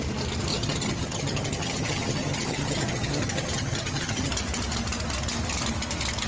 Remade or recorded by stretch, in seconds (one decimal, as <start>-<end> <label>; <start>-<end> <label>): 0.0-0.5 recorded; 0.5-4.3 remade; 4.3-6.3 recorded